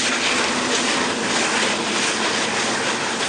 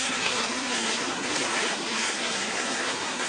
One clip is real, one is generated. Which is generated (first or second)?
second